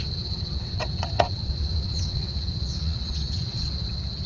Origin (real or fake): fake